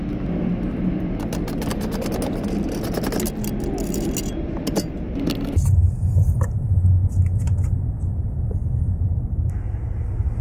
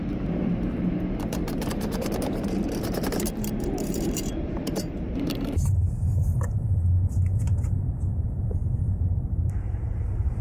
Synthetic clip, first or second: second